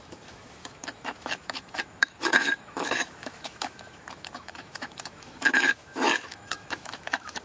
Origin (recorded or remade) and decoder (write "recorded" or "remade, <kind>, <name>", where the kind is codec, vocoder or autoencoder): remade, autoencoder, DAC-VAE